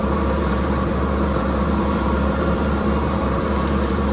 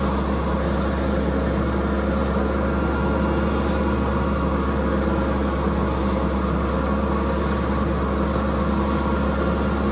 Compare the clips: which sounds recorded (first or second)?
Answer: second